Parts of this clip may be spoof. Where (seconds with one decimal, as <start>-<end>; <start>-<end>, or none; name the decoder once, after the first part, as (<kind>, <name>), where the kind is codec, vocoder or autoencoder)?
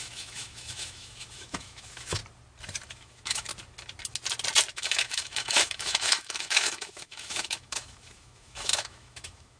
0.0-2.2 (autoencoder, DAC-VAE); 2.9-3.5; 4.7-9.6